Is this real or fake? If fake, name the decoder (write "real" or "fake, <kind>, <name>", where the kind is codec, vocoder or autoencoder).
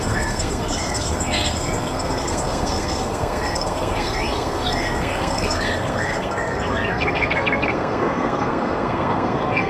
fake, codec, SNAC